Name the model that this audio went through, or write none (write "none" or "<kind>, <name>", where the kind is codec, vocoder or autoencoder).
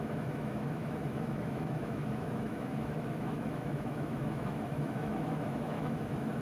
autoencoder, DAC-VAE